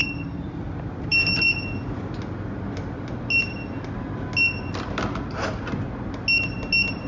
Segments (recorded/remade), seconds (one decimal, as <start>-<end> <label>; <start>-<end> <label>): 0.0-7.1 recorded